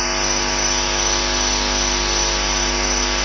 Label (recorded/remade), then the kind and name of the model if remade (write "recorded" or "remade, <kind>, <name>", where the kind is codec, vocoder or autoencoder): recorded